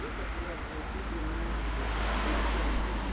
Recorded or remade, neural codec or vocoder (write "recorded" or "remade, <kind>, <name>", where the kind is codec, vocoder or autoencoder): recorded